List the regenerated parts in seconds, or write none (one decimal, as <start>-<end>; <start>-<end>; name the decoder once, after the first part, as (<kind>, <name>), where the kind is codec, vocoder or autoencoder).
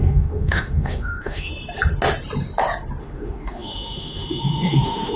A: 0.0-1.5 (autoencoder, DAC-VAE); 3.0-5.2